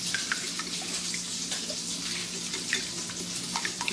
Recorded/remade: recorded